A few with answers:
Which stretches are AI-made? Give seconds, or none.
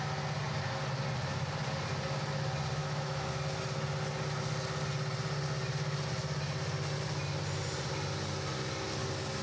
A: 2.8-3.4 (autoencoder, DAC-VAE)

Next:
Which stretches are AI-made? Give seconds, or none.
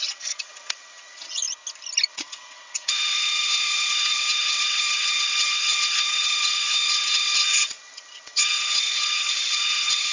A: 0.0-1.4 (vocoder, WaveNeXt); 2.1-10.1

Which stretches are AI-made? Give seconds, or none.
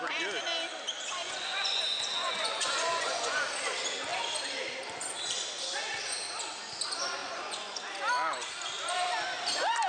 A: 1.2-3.4 (vocoder, Vocos); 7.2-7.8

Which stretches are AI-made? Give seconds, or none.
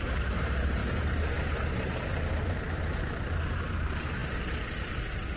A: 0.0-5.4 (vocoder, BigVGAN v2)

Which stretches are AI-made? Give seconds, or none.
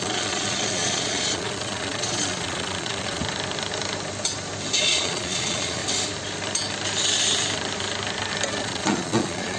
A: 0.0-3.2 (vocoder, Vocos); 4.8-5.8; 8.5-9.6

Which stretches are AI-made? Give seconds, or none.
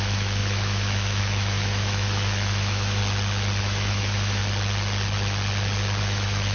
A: 0.0-3.0 (autoencoder, DAC-VAE); 3.6-4.4; 6.0-6.5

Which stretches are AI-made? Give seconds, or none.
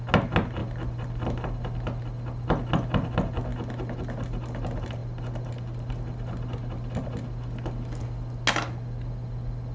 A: none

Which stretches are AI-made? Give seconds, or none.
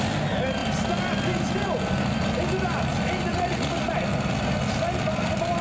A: 3.3-3.9 (vocoder, Vocos)